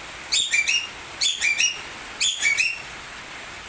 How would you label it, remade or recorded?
recorded